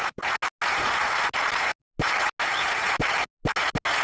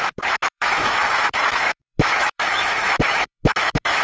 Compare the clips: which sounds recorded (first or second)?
first